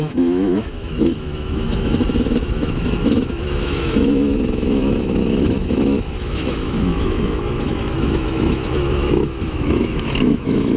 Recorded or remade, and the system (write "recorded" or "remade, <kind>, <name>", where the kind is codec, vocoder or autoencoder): remade, autoencoder, DAC-VAE